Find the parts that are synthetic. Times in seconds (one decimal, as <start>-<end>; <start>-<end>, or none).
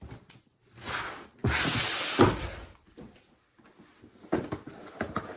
none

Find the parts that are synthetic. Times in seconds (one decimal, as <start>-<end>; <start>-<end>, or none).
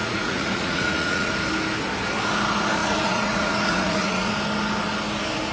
0.0-1.3; 2.8-4.3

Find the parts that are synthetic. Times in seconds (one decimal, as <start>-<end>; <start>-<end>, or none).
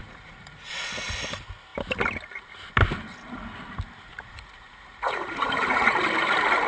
0.0-0.8; 4.1-5.9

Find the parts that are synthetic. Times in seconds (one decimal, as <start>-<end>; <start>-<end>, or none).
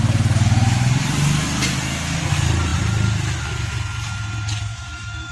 4.7-5.3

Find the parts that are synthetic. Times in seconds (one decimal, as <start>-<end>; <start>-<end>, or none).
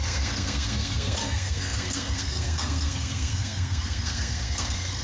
0.0-5.0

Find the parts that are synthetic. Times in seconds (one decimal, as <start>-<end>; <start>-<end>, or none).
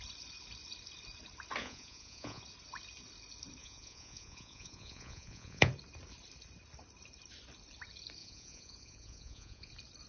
1.6-2.4; 3.6-5.7; 8.2-9.7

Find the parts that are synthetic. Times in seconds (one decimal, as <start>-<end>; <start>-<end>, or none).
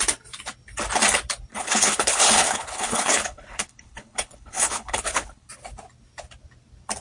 1.5-5.5